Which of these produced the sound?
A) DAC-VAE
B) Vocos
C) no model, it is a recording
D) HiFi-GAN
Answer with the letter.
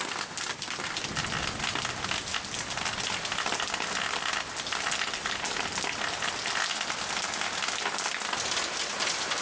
C